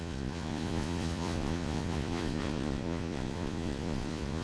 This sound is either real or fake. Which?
fake